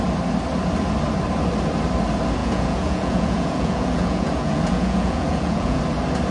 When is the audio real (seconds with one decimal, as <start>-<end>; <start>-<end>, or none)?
0.0-2.4; 5.8-6.3